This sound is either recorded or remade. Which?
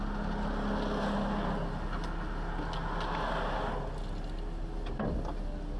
recorded